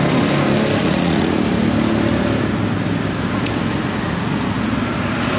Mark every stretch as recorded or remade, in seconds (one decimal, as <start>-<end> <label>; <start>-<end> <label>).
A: 0.0-0.8 recorded; 0.8-1.4 remade; 1.4-5.4 recorded